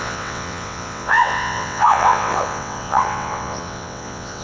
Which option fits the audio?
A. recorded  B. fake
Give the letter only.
B